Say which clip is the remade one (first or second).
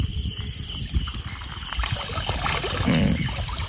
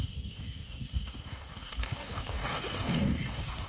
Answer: second